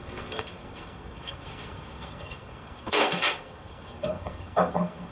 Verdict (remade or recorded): remade